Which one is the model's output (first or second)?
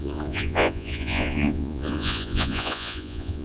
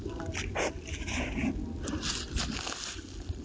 first